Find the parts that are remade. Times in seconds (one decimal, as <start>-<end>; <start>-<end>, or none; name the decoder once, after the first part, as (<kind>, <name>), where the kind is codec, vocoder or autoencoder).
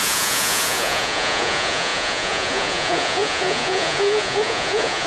0.0-5.1 (vocoder, Vocos)